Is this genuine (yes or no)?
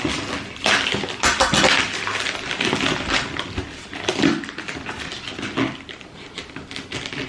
yes